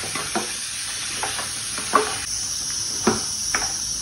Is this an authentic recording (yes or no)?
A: no